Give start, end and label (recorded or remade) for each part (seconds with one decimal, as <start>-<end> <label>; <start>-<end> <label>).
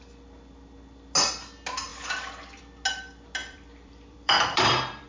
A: 0.0-3.4 recorded; 3.4-5.1 remade